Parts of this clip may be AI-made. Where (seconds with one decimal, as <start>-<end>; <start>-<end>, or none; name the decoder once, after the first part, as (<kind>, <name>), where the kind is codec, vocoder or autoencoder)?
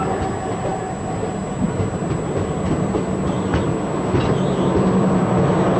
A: none